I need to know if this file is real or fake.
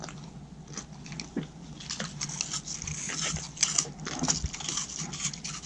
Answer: real